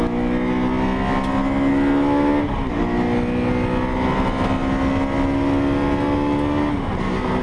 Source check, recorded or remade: recorded